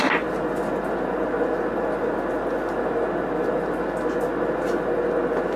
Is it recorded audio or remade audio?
recorded